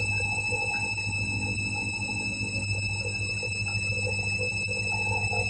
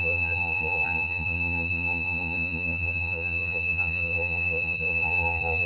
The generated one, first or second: second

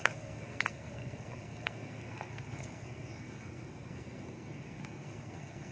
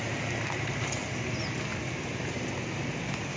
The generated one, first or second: first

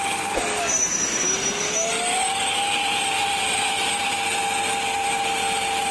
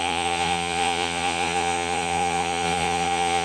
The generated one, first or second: second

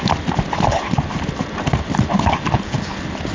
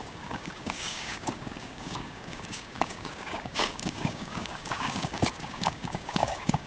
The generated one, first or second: second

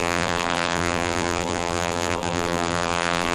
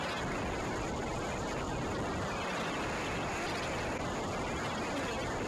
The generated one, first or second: first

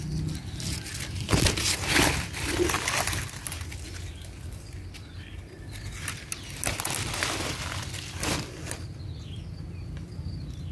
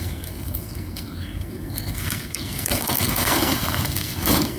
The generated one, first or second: second